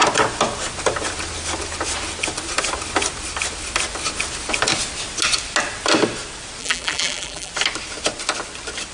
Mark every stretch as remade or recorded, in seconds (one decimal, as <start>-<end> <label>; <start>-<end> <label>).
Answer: 0.0-6.6 recorded; 6.6-7.5 remade; 7.5-8.9 recorded